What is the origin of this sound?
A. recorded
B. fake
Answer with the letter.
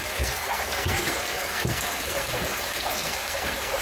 B